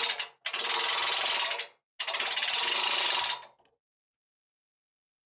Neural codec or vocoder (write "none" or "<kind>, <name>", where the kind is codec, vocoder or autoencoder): none